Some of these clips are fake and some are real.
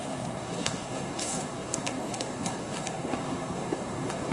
fake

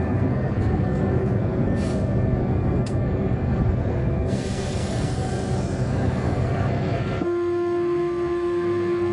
fake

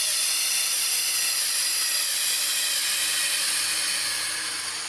real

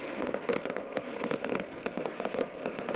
fake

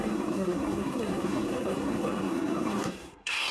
fake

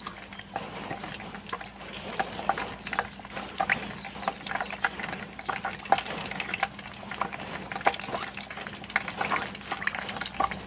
real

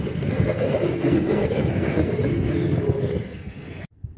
fake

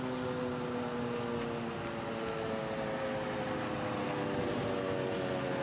real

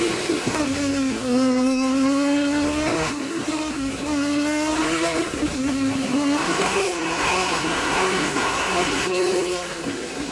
fake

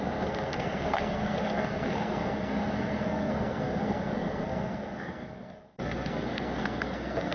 fake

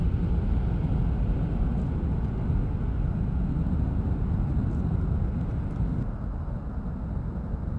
real